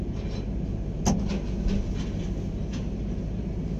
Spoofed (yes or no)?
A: no